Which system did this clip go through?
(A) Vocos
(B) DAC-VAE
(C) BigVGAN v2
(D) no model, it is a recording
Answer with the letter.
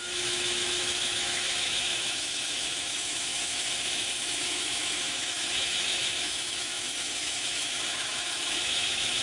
B